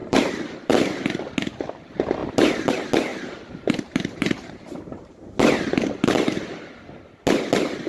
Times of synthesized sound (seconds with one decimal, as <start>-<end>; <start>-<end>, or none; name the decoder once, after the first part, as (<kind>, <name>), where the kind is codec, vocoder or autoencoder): 0.0-1.0 (vocoder, BigVGAN v2); 3.1-5.1